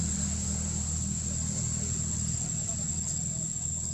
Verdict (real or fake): real